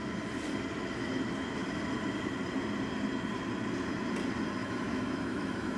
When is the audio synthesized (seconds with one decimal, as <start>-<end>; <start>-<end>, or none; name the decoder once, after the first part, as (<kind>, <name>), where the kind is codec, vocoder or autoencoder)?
4.6-5.8 (autoencoder, DAC-VAE)

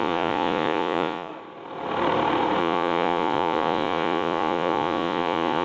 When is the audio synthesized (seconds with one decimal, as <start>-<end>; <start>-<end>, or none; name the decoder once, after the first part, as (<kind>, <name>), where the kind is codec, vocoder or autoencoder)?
0.0-1.3 (vocoder, Vocos); 2.6-5.6

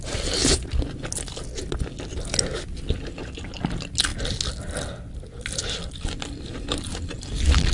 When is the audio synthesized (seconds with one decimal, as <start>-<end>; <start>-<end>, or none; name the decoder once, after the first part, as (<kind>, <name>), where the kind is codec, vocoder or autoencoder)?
none

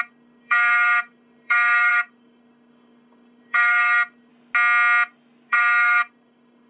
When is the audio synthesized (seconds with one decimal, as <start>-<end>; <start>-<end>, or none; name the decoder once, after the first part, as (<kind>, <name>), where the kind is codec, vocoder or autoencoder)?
0.0-4.3 (codec, DAC); 5.5-6.7

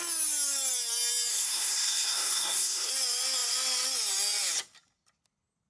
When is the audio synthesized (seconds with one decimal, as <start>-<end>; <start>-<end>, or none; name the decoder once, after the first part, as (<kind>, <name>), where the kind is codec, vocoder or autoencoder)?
1.3-2.9 (codec, SNAC)

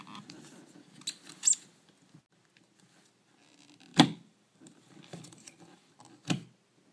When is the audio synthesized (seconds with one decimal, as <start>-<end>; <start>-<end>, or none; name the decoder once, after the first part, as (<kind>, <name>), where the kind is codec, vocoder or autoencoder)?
3.9-5.8 (vocoder, BigVGAN v2)

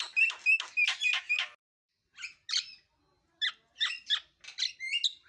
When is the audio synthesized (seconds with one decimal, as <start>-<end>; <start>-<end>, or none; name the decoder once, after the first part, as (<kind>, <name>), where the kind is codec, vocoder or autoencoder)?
none